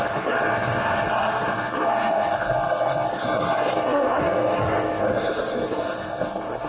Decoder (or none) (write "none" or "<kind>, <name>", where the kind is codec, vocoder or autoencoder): codec, SNAC